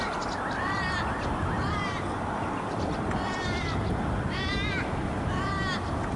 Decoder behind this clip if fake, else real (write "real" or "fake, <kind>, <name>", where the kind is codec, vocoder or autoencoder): real